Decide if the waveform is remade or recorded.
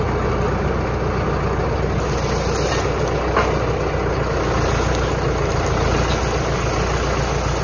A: recorded